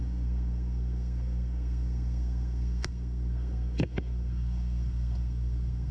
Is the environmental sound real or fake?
fake